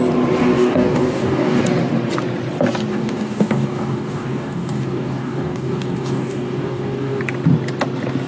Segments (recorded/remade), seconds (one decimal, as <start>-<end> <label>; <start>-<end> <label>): 0.0-0.4 recorded; 0.4-1.6 remade; 1.6-2.9 recorded; 2.9-7.2 remade; 7.2-8.3 recorded